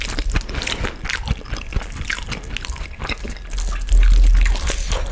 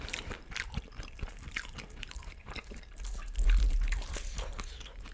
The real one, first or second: first